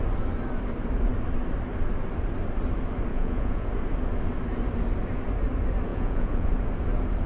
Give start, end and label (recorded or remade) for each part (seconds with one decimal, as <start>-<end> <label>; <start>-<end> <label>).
0.0-3.1 recorded; 3.1-3.7 remade; 3.7-5.9 recorded; 5.9-6.5 remade; 6.5-7.3 recorded